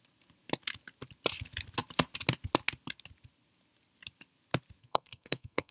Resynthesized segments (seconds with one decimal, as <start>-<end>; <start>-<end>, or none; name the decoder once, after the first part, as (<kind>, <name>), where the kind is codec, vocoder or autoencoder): 4.8-5.7 (codec, SNAC)